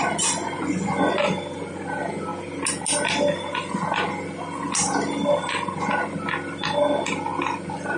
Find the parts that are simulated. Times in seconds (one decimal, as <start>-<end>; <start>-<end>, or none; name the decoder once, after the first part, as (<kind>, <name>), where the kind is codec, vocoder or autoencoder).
0.4-1.2 (vocoder, Vocos)